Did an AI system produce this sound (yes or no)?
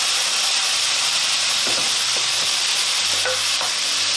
yes